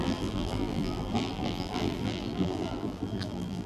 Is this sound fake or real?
fake